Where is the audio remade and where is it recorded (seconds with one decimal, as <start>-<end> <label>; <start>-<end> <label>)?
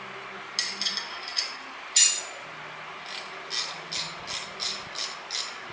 0.0-5.7 recorded